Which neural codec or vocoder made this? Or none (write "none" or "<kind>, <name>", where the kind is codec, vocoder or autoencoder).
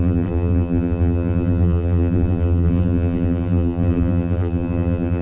vocoder, BigVGAN v2